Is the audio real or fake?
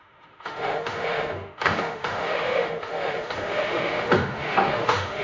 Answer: fake